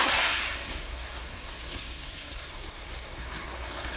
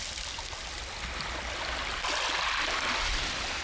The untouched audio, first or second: second